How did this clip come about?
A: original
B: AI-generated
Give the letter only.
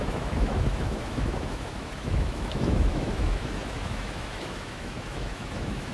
B